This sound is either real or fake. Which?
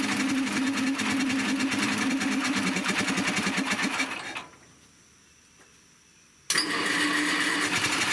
real